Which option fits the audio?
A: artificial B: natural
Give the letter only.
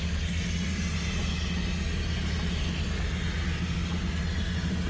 B